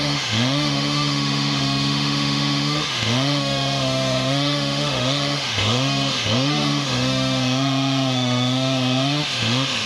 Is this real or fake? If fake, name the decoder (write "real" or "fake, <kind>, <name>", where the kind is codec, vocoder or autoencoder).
fake, autoencoder, DAC-VAE